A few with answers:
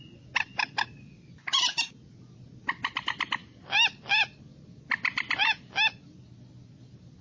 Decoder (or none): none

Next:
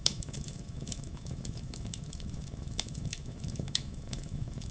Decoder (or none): autoencoder, DAC-VAE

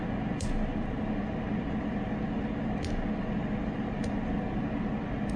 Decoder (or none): none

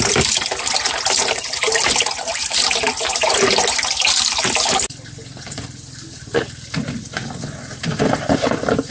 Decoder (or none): none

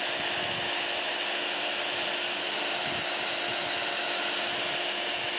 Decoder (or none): none